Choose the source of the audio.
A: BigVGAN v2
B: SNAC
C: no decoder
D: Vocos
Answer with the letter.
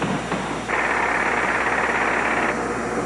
C